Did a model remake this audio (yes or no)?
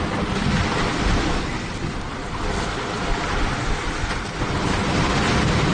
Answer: no